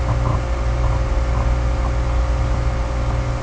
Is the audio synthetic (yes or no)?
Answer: no